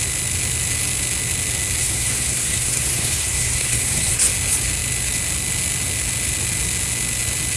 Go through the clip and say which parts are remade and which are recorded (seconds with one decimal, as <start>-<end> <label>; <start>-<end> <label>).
0.0-1.8 recorded; 1.8-4.3 remade; 4.3-7.6 recorded